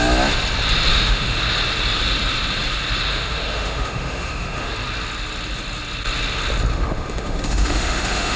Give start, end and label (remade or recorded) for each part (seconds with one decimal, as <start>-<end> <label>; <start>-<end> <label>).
0.0-0.9 recorded; 0.9-1.4 remade; 1.4-3.1 recorded; 3.1-4.7 remade; 4.7-6.7 recorded; 6.7-8.4 remade